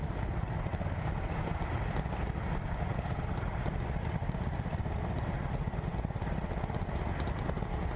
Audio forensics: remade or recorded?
recorded